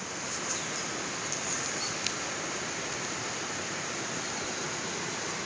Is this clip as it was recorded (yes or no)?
yes